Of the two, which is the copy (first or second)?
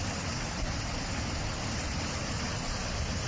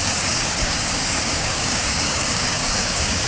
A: second